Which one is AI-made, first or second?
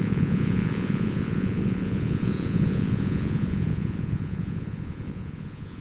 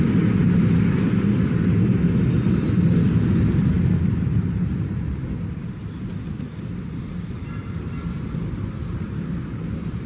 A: first